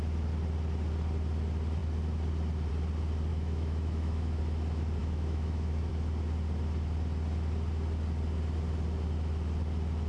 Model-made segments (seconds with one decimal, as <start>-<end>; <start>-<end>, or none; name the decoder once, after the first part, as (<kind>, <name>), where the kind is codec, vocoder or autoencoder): 3.3-4.4 (autoencoder, DAC-VAE); 5.0-5.9